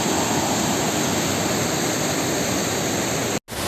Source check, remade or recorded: recorded